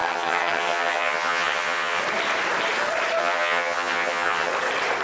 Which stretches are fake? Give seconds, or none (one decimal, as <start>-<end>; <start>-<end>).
0.0-2.0; 3.2-4.5